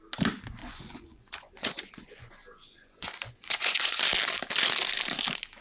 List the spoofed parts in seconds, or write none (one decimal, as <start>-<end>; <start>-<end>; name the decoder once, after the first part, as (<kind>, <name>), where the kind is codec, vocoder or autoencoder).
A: 0.6-4.0 (vocoder, Vocos)